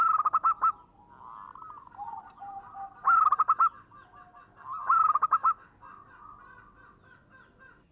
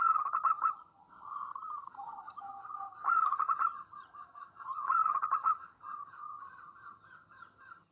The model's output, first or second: second